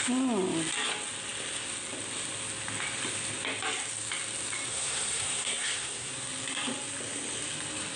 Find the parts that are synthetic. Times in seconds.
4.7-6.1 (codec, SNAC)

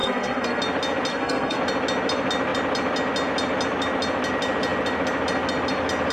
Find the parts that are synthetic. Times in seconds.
0.0-0.6 (codec, SNAC); 1.1-1.6

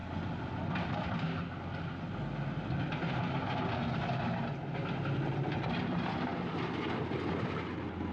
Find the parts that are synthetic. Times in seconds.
none